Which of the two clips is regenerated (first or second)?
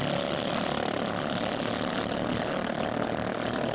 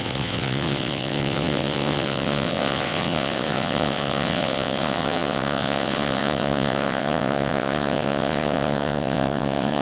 second